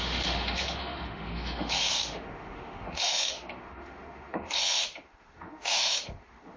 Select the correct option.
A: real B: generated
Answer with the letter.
B